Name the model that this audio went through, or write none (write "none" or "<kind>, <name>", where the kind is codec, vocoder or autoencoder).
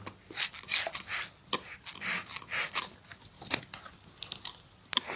none